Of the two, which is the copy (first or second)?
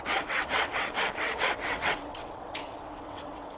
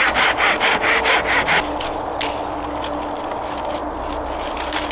first